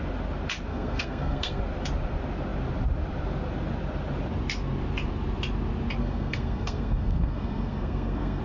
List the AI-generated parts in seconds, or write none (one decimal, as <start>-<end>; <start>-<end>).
0.7-1.6; 6.0-8.4